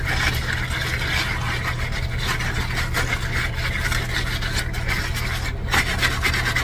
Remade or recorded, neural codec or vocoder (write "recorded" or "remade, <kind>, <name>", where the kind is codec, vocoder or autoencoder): recorded